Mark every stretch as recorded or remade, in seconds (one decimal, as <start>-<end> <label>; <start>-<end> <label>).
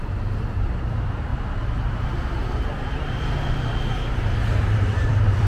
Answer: 0.0-1.3 remade; 1.3-4.6 recorded; 4.6-5.5 remade